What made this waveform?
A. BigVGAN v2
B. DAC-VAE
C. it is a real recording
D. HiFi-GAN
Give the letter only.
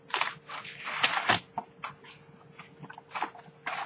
C